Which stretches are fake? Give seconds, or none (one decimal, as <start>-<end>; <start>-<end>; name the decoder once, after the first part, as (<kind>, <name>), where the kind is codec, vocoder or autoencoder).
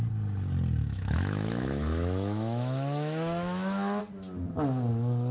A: 0.8-4.0 (autoencoder, DAC-VAE)